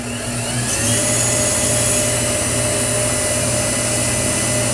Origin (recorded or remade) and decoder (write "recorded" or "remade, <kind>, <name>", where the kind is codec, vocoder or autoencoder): recorded